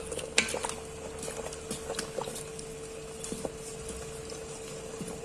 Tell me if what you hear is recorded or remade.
recorded